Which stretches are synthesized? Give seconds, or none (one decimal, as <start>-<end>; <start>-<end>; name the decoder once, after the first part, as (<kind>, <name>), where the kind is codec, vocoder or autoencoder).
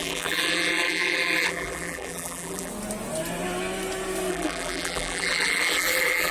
0.0-2.7 (vocoder, BigVGAN v2); 4.3-6.3